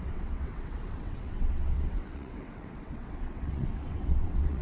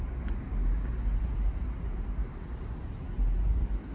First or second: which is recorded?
second